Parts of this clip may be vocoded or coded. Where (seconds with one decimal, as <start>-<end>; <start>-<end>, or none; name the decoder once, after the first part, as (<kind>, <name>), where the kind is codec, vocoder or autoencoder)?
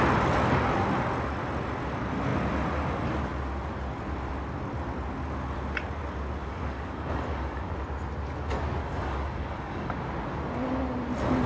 6.4-7.7 (codec, DAC); 8.8-10.0